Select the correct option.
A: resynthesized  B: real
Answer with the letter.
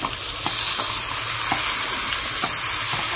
B